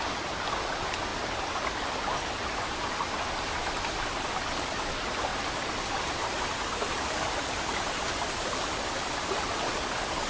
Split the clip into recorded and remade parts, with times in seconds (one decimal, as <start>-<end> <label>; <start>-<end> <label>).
0.0-10.3 recorded